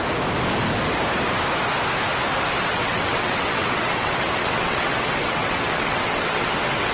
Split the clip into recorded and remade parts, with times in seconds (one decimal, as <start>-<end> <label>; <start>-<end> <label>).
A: 0.0-2.7 recorded; 2.7-6.9 remade